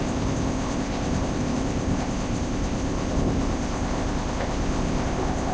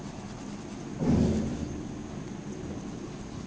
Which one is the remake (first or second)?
first